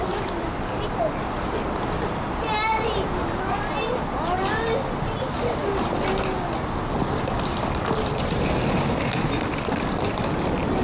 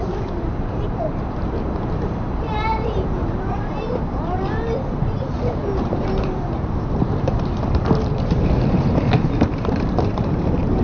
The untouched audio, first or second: first